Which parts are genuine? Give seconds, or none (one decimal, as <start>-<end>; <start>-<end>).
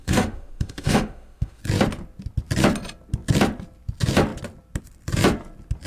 1.6-5.9